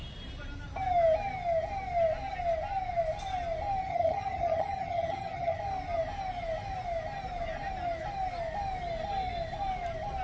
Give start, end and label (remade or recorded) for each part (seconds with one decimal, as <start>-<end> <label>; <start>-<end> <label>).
0.0-3.8 recorded; 3.8-5.6 remade; 5.6-10.2 recorded

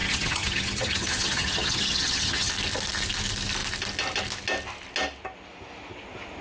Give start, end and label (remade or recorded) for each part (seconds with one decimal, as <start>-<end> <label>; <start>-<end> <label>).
0.0-2.5 remade; 2.5-6.4 recorded

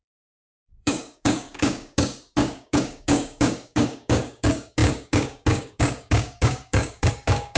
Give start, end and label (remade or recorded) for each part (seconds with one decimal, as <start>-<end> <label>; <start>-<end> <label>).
0.0-7.6 remade

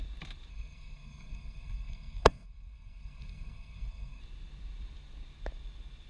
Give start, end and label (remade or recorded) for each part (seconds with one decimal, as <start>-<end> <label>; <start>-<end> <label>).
0.0-0.5 recorded; 0.5-4.2 remade; 4.2-6.1 recorded

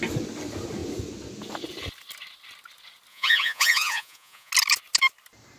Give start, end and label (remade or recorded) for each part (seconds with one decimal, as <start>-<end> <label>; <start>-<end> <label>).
0.0-3.1 recorded; 3.1-4.5 remade; 4.5-5.6 recorded